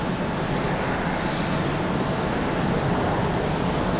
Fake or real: real